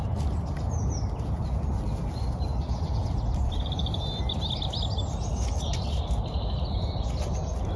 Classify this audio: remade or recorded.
recorded